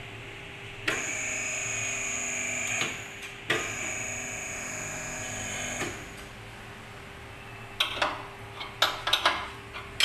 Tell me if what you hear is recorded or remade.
recorded